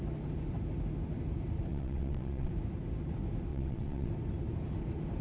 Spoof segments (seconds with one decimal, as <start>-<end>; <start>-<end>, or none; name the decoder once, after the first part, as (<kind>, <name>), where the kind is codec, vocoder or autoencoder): 1.7-2.5 (vocoder, WaveNeXt); 3.5-4.1